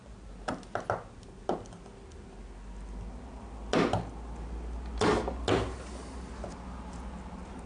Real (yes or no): yes